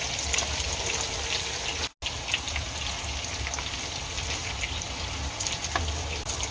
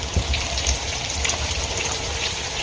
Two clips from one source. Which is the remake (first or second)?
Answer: second